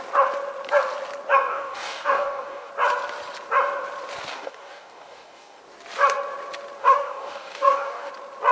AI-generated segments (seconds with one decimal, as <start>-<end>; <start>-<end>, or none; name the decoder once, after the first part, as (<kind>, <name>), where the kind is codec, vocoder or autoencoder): 1.5-2.7 (codec, DAC); 4.3-5.6; 6.8-8.1